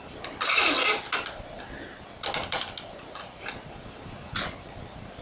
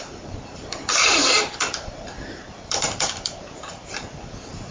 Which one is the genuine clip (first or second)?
first